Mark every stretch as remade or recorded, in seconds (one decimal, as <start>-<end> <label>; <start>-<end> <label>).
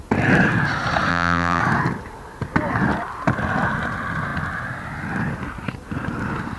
0.0-1.1 recorded; 1.1-1.6 remade; 1.6-6.6 recorded